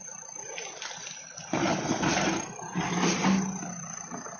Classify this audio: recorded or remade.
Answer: recorded